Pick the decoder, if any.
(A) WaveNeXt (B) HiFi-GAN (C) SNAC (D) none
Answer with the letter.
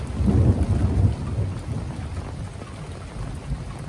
D